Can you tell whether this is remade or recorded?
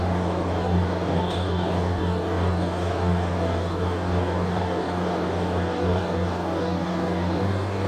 remade